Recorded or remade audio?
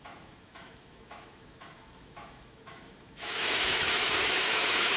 remade